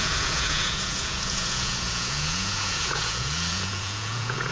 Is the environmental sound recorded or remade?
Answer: remade